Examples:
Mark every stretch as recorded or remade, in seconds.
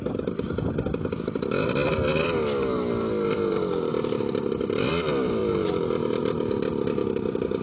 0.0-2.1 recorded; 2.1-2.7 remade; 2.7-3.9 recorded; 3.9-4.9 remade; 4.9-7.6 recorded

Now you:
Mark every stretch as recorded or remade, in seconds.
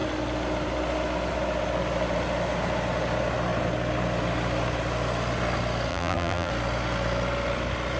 0.0-5.9 recorded; 5.9-6.5 remade; 6.5-8.0 recorded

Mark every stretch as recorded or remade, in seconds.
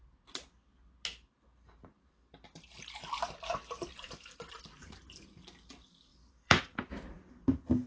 0.0-1.1 recorded; 1.1-3.0 remade; 3.0-3.9 recorded; 3.9-4.6 remade; 4.6-6.1 recorded; 6.1-7.3 remade; 7.3-7.9 recorded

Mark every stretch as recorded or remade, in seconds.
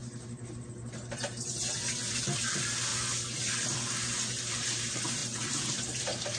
0.0-2.9 remade; 2.9-4.3 recorded; 4.3-6.4 remade